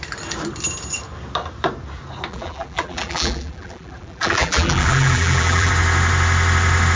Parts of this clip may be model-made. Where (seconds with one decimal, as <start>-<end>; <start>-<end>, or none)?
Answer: 2.3-5.7